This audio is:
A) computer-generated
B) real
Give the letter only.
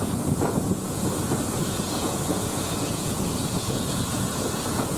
A